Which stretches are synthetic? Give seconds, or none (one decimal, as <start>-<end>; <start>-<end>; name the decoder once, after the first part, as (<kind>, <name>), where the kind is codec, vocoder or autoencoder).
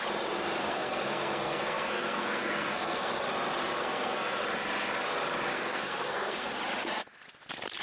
0.6-3.1 (codec, SNAC); 3.8-4.4; 5.5-6.5